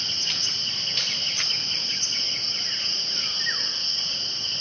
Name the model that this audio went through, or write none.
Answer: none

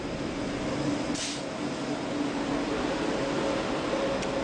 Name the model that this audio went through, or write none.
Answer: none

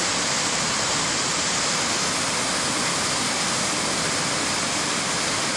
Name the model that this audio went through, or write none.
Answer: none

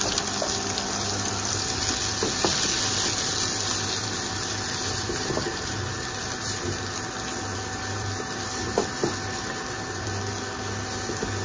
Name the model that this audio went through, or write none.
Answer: none